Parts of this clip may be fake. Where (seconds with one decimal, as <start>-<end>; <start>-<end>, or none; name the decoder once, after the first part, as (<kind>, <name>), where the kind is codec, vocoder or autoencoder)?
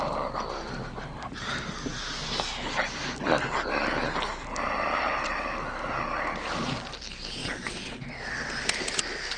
7.4-8.0 (vocoder, Vocos)